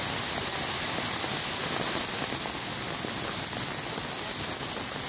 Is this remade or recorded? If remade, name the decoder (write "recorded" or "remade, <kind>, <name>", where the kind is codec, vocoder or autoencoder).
recorded